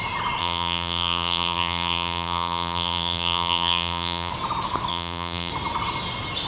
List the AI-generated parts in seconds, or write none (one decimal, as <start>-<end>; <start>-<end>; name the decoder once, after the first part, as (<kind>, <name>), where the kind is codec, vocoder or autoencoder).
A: 0.4-4.3 (vocoder, BigVGAN v2); 4.9-5.5